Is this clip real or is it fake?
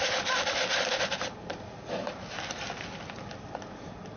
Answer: real